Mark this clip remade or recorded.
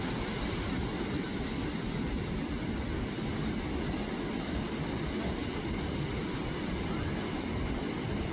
recorded